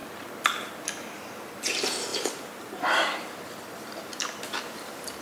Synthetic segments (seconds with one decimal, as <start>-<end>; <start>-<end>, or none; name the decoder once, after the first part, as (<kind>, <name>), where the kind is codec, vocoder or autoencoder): 2.1-5.2 (vocoder, BigVGAN v2)